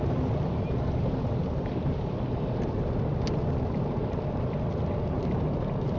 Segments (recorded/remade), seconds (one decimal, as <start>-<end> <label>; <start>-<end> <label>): 0.0-6.0 recorded